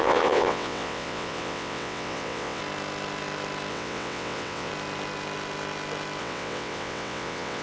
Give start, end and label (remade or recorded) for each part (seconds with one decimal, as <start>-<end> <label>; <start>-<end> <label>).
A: 0.0-2.6 remade; 2.6-3.7 recorded; 3.7-4.7 remade; 4.7-6.2 recorded; 6.2-7.6 remade